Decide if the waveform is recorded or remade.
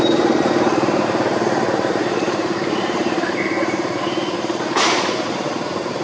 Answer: remade